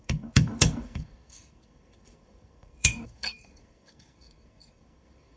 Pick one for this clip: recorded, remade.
remade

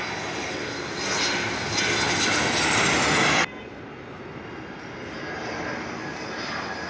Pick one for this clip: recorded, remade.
recorded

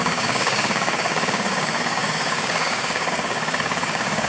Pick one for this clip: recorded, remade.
remade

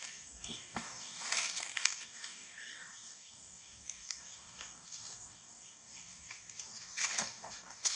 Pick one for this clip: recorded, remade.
remade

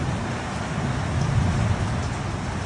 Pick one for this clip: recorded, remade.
recorded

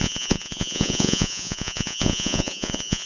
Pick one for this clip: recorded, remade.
remade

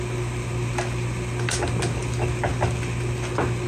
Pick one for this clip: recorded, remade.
recorded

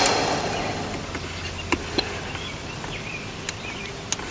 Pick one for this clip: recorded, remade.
recorded